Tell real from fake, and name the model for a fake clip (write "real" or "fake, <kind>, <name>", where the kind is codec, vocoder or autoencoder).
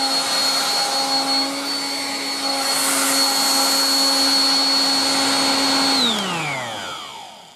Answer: real